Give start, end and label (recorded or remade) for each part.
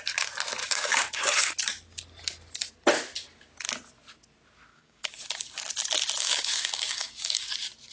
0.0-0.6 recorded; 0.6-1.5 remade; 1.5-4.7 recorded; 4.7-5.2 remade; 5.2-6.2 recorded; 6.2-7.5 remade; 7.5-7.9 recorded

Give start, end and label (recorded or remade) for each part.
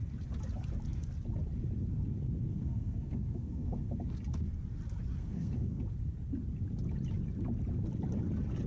0.0-2.5 recorded; 2.5-3.9 remade; 3.9-5.2 recorded; 5.2-5.8 remade; 5.8-8.7 recorded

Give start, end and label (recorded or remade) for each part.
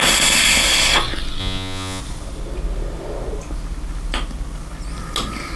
0.0-1.4 recorded; 1.4-2.0 remade; 2.0-5.6 recorded